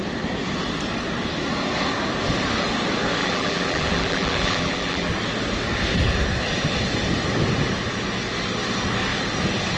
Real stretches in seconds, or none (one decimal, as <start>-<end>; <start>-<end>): 0.0-3.2; 5.1-9.8